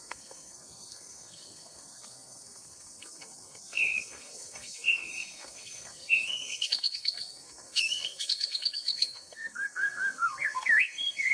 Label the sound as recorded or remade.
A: remade